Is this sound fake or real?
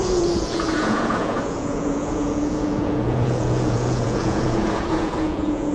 fake